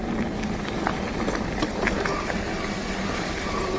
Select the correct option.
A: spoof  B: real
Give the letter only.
B